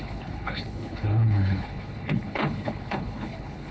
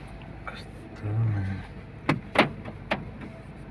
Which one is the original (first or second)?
second